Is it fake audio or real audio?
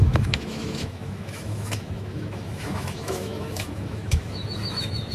fake